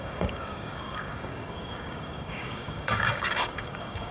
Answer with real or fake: fake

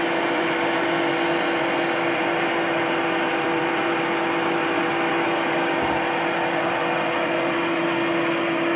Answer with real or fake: real